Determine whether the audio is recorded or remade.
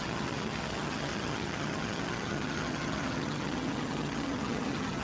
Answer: remade